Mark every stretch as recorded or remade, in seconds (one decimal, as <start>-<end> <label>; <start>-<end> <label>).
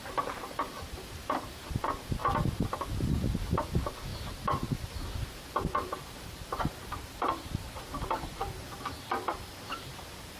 0.0-2.2 remade; 2.2-3.2 recorded; 3.2-10.4 remade